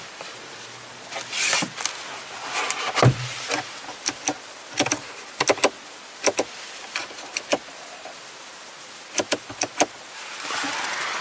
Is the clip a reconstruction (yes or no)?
no